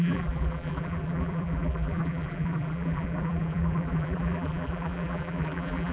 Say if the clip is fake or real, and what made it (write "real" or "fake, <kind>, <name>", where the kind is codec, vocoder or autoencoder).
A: fake, vocoder, BigVGAN v2